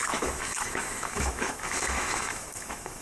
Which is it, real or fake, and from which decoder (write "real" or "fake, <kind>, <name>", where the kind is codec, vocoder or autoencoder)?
fake, autoencoder, DAC-VAE